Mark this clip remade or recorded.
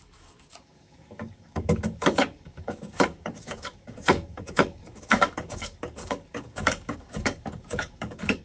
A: remade